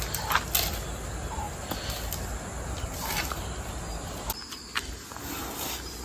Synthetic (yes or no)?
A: no